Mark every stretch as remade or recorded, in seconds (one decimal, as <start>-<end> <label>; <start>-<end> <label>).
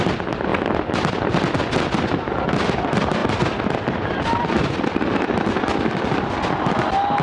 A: 0.0-7.2 recorded